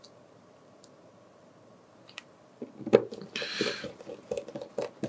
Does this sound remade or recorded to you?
recorded